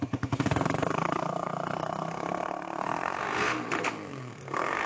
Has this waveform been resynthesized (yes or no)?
yes